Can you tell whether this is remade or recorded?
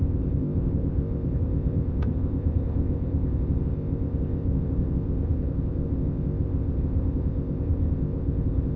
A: remade